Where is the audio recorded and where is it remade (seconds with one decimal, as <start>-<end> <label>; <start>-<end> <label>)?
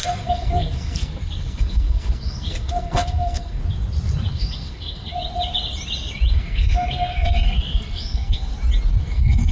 0.0-3.6 remade; 3.6-4.3 recorded; 4.3-5.1 remade; 5.1-6.3 recorded; 6.3-8.5 remade; 8.5-9.0 recorded; 9.0-9.5 remade